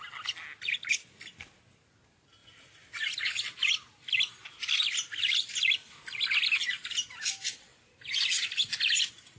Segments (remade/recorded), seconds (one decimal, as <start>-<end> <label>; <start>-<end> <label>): 0.0-9.4 recorded